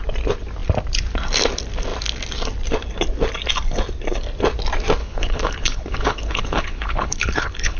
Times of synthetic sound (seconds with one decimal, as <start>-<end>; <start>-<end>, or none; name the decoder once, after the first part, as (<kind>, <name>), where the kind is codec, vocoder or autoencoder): 5.0-7.8 (codec, HILCodec)